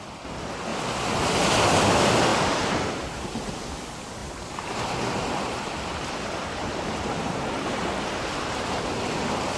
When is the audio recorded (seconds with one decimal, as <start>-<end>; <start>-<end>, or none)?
0.0-2.3; 3.6-4.2; 5.7-6.6; 7.9-9.6